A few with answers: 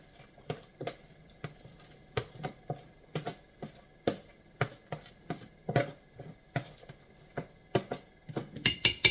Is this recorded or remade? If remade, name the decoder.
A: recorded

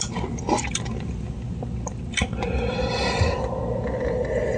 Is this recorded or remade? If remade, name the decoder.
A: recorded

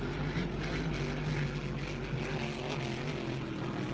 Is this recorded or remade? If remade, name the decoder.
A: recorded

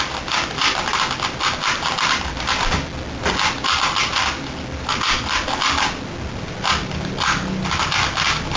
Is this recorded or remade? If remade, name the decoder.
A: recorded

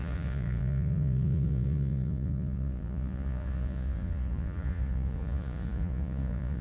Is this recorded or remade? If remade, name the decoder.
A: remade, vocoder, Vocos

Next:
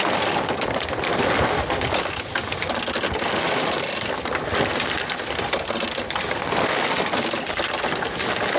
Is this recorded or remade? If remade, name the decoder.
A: recorded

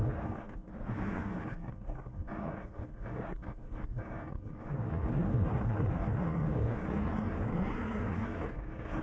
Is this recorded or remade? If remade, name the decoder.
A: remade, codec, SNAC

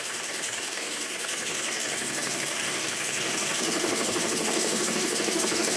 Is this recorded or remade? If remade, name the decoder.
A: remade, codec, DAC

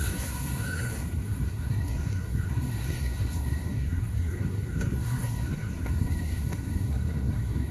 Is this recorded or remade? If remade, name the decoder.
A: remade, codec, SNAC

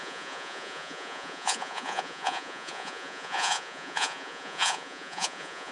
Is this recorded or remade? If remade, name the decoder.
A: remade, vocoder, Vocos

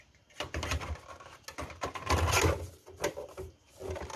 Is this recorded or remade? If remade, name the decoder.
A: recorded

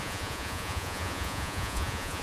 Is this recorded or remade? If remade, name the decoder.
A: remade, vocoder, Vocos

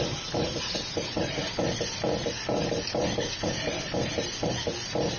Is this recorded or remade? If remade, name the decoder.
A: recorded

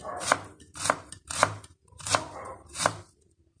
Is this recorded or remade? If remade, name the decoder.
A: remade, vocoder, BigVGAN v2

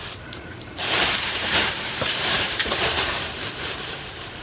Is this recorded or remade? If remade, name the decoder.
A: remade, vocoder, BigVGAN v2